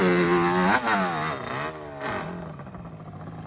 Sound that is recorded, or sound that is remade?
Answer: recorded